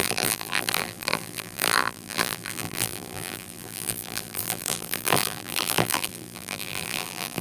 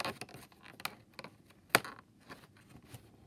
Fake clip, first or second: first